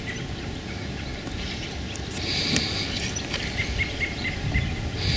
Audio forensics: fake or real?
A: real